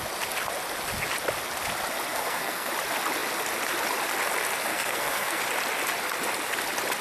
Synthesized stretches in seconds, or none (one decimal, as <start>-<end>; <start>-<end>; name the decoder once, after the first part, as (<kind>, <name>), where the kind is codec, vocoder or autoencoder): 2.1-2.7 (codec, SNAC); 4.7-5.4